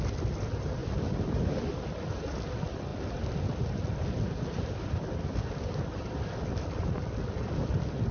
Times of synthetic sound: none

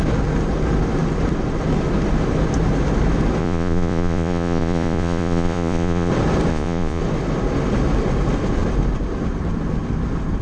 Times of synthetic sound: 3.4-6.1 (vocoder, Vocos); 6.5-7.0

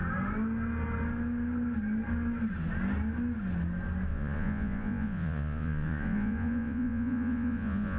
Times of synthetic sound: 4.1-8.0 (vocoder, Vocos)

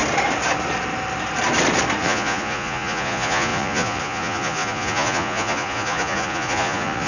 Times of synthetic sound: 2.0-7.1 (vocoder, Vocos)

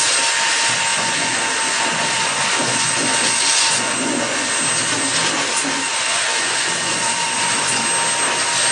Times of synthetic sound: 0.9-4.5 (vocoder, Vocos); 5.9-7.8

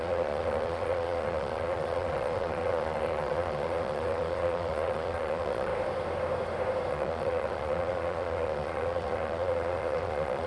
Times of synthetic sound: 0.0-5.7 (vocoder, Vocos); 6.9-10.5